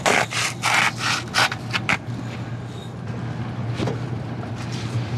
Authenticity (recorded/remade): recorded